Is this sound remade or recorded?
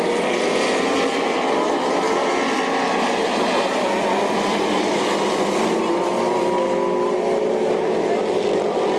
recorded